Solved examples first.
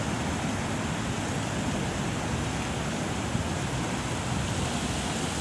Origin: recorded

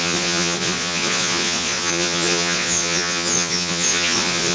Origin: remade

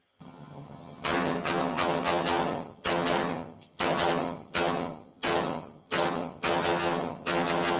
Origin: remade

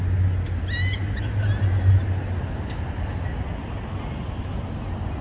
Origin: recorded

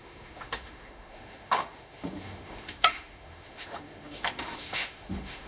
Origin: remade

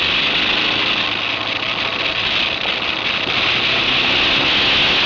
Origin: recorded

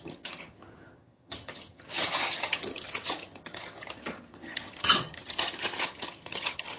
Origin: remade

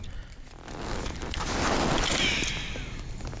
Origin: recorded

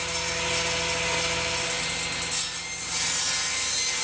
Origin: recorded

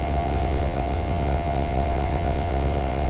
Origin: remade